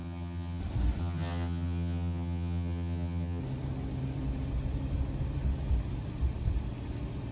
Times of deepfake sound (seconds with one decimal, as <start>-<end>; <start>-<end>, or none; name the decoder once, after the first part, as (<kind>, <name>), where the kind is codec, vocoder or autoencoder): 0.0-0.6 (vocoder, HiFi-GAN); 1.0-3.4